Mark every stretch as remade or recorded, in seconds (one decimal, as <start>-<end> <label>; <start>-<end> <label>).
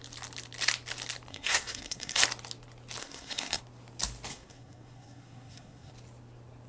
0.0-1.3 recorded; 1.3-2.2 remade; 2.2-3.0 recorded; 3.0-3.6 remade; 3.6-4.3 recorded; 4.3-5.9 remade; 5.9-6.7 recorded